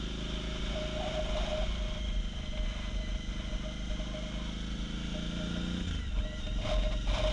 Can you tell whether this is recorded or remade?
recorded